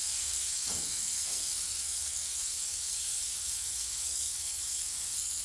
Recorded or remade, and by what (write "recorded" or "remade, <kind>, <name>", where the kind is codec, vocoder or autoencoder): remade, codec, SNAC